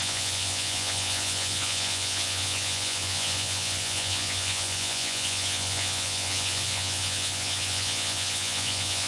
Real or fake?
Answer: fake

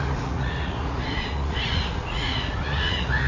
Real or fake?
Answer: fake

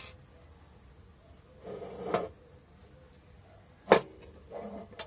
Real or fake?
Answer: real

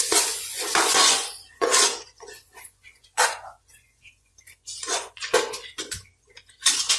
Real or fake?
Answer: fake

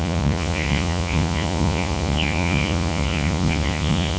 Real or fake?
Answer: fake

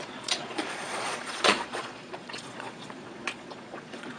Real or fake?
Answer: fake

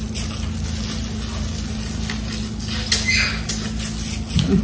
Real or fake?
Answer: real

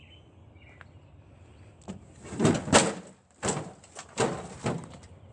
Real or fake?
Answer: real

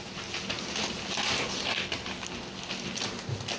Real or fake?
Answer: real